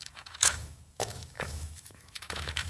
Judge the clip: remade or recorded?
remade